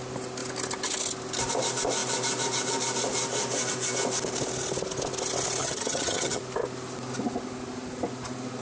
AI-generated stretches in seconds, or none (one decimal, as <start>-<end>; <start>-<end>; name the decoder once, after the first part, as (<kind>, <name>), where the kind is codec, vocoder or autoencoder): 5.6-6.4 (vocoder, HiFi-GAN)